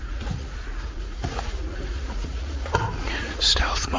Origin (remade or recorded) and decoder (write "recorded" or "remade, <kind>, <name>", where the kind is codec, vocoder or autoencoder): remade, vocoder, Vocos